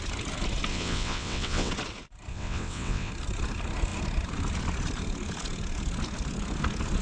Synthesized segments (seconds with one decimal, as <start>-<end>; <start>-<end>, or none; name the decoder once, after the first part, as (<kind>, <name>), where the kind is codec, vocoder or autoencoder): 0.7-1.7 (vocoder, WaveNeXt); 2.3-3.1